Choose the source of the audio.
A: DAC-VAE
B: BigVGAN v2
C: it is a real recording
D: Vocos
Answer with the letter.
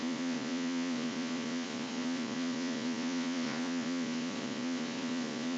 D